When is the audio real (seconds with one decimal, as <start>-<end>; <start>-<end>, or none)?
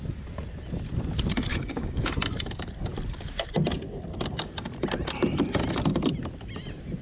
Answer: 0.0-1.5; 2.1-7.0